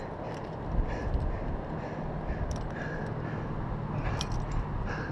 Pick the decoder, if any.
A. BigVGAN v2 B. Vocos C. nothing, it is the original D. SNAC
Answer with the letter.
C